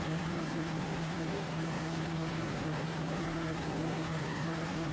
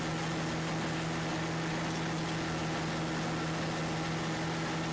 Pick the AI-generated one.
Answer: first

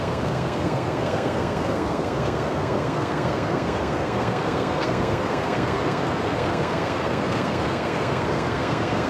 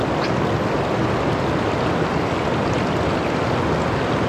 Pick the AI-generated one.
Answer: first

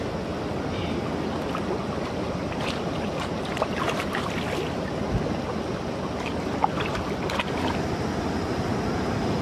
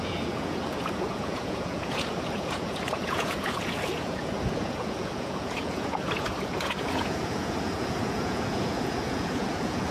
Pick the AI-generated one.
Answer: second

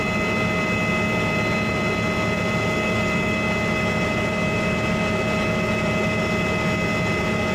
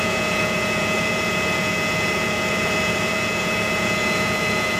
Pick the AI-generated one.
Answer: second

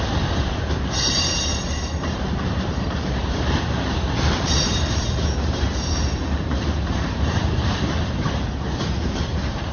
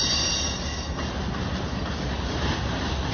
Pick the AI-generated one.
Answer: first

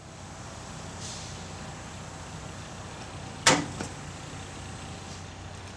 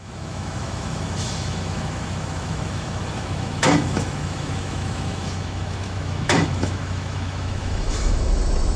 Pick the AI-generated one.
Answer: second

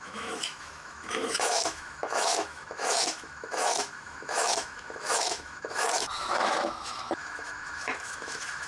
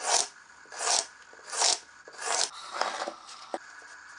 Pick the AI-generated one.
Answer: first